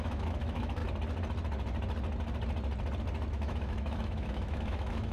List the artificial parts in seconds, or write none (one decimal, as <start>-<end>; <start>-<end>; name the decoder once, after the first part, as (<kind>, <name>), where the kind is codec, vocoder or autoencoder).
0.0-0.8 (autoencoder, DAC-VAE); 3.3-5.1